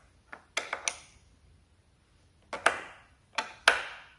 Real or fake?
real